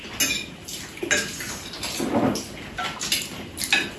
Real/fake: real